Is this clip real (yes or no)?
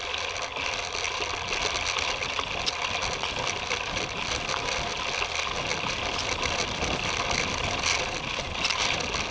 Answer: yes